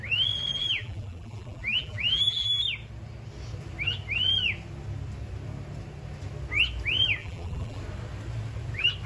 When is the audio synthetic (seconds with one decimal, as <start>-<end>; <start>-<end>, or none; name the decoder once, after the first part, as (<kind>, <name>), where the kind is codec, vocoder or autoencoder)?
0.6-2.6 (vocoder, BigVGAN v2); 7.2-7.8